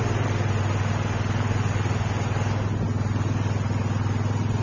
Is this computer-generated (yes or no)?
no